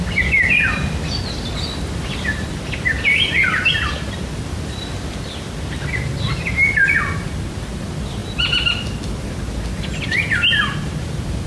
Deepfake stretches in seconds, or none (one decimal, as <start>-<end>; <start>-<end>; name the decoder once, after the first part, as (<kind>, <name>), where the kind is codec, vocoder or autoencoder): none